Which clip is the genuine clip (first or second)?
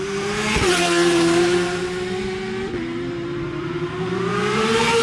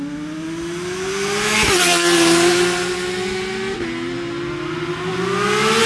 second